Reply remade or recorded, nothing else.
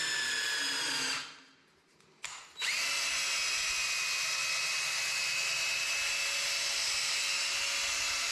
recorded